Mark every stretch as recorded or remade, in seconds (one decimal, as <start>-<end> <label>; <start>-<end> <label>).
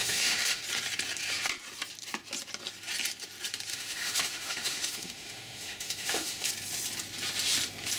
0.0-0.6 remade; 0.6-3.7 recorded; 3.7-6.5 remade; 6.5-8.0 recorded